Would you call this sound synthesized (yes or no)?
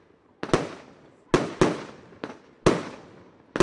no